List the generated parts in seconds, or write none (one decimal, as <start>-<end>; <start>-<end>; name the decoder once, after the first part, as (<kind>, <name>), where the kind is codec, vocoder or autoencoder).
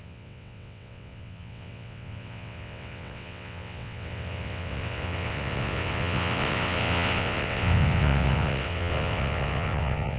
0.0-10.2 (vocoder, WaveNeXt)